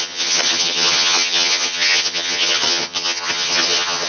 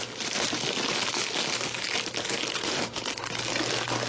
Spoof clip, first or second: first